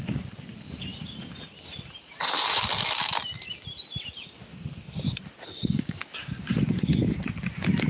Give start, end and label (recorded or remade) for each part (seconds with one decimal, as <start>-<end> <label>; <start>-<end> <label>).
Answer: 0.0-5.5 recorded; 5.5-6.1 remade; 6.1-7.9 recorded